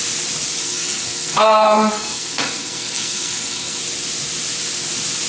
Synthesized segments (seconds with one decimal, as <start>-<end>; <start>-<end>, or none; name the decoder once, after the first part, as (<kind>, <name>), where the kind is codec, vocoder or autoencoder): 0.6-3.8 (codec, SNAC)